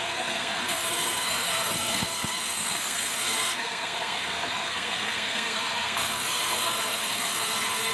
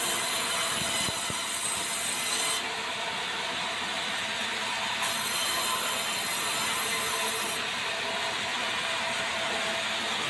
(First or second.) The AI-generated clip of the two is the first